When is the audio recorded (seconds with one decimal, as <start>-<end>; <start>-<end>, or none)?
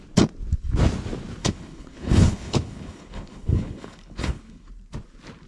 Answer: 0.0-1.4; 4.7-5.5